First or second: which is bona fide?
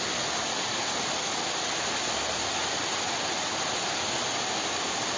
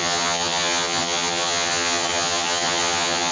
first